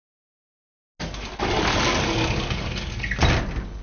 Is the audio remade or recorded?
recorded